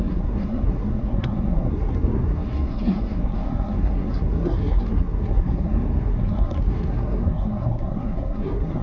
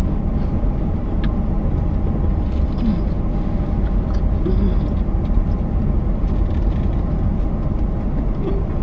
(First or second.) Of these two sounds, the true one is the second